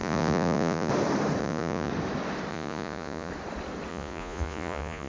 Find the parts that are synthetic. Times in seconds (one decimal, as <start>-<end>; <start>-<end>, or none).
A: 0.0-0.9; 1.4-1.9; 2.5-3.3; 3.9-5.1